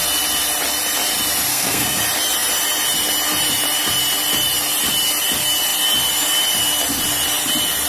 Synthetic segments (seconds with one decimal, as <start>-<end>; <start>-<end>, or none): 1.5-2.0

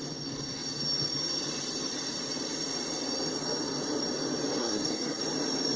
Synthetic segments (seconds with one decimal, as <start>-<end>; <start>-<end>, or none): 4.6-5.2

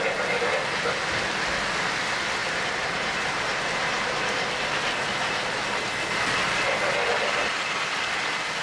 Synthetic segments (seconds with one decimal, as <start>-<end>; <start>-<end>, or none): none

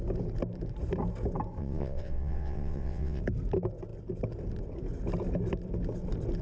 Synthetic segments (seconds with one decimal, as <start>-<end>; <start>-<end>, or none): 1.6-3.2

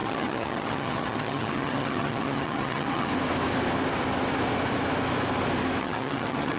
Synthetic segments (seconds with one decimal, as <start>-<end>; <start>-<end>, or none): 0.0-3.1; 5.8-6.6

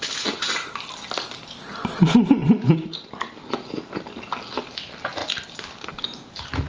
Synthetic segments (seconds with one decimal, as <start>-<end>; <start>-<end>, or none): none